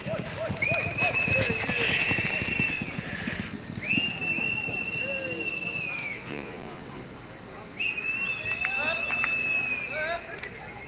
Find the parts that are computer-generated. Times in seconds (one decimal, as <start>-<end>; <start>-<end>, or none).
6.0-6.8

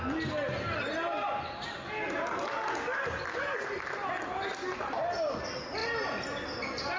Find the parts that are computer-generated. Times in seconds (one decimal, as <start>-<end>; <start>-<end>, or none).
none

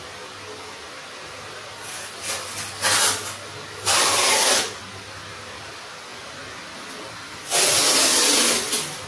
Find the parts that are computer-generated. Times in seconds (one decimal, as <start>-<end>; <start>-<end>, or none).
none

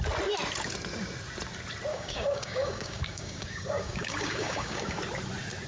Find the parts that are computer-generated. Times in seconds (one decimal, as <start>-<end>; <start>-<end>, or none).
1.9-5.0

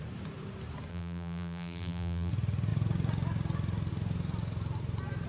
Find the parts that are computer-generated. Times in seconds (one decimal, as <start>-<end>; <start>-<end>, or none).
0.9-2.3

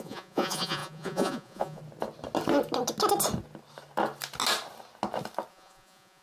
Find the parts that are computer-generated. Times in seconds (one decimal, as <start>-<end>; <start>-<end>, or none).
0.0-1.8; 5.5-6.2